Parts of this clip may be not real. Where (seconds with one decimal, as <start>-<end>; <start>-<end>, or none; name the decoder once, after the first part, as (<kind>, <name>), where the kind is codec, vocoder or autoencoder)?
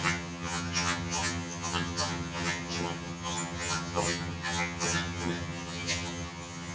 0.0-6.7 (vocoder, HiFi-GAN)